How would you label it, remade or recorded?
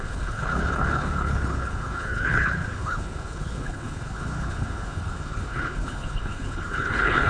remade